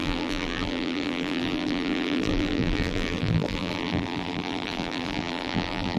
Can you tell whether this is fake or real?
fake